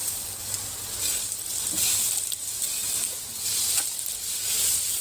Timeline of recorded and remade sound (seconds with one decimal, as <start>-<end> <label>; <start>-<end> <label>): 0.0-5.0 recorded